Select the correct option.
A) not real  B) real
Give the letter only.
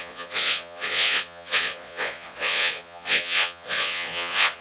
A